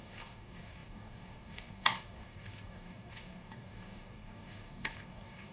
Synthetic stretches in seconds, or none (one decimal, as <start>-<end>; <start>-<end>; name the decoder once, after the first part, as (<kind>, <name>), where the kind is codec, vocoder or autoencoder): 0.0-5.5 (codec, DAC)